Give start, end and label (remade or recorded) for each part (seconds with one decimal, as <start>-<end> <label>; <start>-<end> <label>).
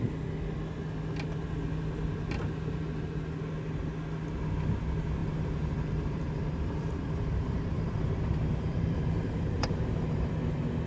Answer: 0.0-5.2 recorded; 5.2-10.3 remade; 10.3-10.9 recorded